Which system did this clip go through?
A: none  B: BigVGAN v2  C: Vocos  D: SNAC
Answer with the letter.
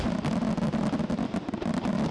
A